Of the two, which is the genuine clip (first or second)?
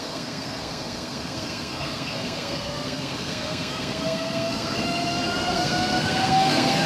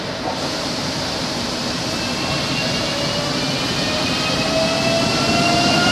second